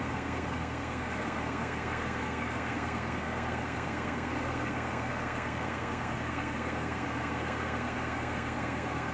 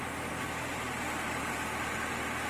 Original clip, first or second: second